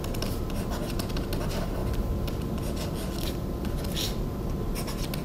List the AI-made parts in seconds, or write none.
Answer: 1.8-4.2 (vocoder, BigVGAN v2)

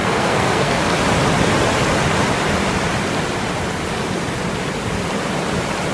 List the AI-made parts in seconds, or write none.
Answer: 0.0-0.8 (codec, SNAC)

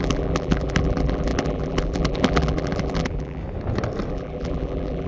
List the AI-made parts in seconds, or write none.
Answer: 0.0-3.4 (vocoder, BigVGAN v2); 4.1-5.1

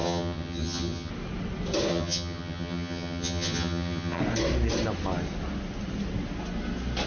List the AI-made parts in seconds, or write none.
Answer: 0.0-1.1 (vocoder, HiFi-GAN); 1.9-4.2

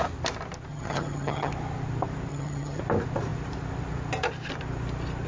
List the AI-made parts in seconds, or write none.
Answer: 0.7-1.5 (vocoder, HiFi-GAN); 2.3-2.8